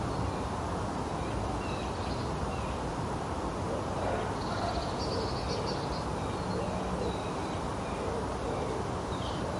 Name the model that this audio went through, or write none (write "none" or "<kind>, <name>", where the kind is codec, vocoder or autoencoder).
none